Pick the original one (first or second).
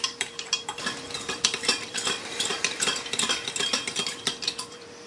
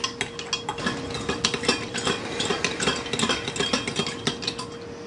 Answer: second